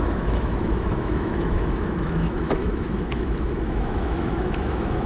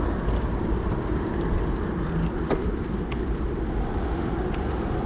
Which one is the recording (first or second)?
second